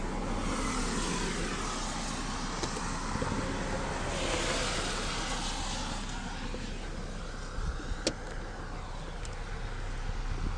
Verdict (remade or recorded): recorded